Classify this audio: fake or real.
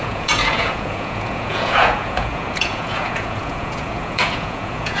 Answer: fake